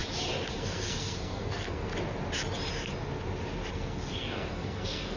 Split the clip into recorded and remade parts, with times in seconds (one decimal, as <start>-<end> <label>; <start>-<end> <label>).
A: 0.0-0.5 recorded; 0.5-1.9 remade; 1.9-3.7 recorded; 3.7-5.2 remade